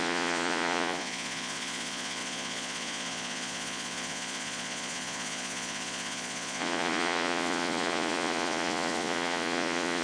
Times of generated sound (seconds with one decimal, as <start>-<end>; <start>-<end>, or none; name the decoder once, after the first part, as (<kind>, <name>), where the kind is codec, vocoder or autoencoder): 0.0-10.0 (vocoder, Vocos)